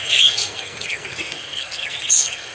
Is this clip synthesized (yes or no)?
yes